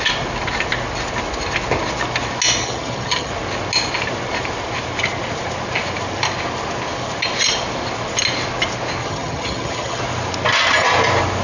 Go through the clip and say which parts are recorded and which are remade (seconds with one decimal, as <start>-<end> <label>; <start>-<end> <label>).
0.0-2.6 recorded; 2.6-3.3 remade; 3.3-9.0 recorded; 9.0-10.0 remade; 10.0-11.4 recorded